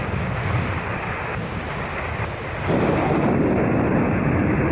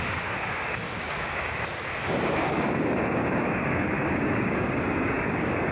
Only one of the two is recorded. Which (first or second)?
first